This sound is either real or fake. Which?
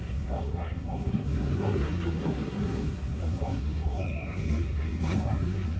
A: fake